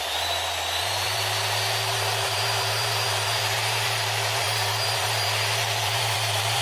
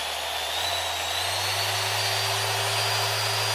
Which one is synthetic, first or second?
first